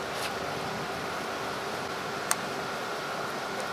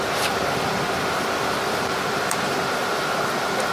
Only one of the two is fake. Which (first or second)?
second